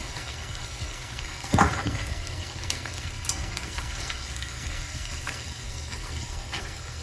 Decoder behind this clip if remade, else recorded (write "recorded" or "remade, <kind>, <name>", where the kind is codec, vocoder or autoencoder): remade, codec, SNAC